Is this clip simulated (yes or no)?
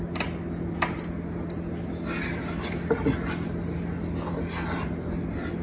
no